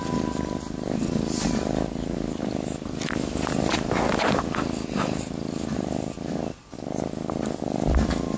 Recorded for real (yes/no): yes